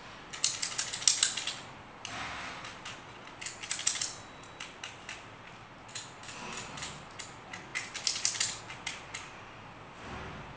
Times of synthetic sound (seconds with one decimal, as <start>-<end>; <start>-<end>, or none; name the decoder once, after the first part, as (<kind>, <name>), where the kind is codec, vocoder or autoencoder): none